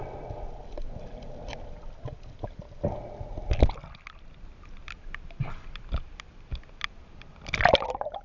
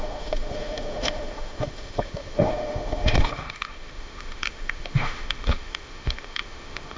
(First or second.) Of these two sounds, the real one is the first